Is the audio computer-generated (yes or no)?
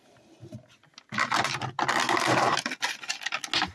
no